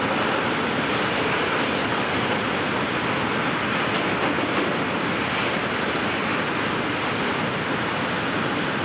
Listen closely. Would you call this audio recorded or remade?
recorded